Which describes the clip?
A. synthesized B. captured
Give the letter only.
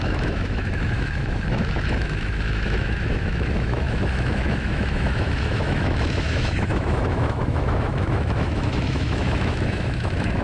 A